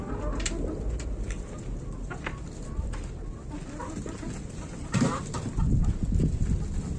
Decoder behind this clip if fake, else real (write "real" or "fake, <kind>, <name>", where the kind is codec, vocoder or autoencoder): real